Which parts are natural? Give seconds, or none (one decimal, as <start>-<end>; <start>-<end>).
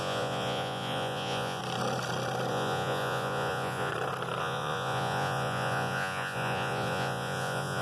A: 1.6-2.5; 3.9-4.4